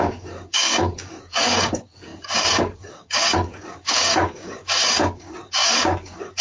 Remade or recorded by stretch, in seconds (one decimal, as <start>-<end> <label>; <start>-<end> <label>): 0.0-6.4 remade